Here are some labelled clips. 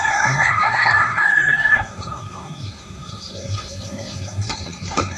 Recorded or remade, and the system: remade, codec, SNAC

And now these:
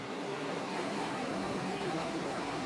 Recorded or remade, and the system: remade, codec, SNAC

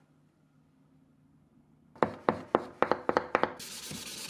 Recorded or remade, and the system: recorded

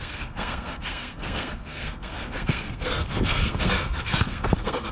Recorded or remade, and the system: remade, codec, SNAC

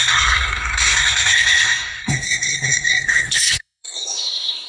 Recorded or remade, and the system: remade, codec, SNAC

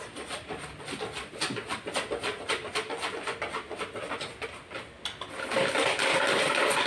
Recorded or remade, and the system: recorded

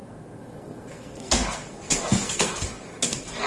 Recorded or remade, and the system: remade, codec, SNAC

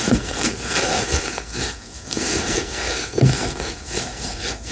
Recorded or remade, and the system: remade, codec, SNAC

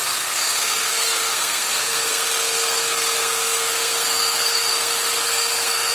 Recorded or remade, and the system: remade, codec, SNAC